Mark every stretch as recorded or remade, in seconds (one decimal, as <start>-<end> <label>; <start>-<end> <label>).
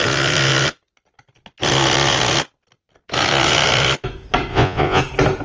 0.0-4.5 recorded; 4.5-5.0 remade; 5.0-5.4 recorded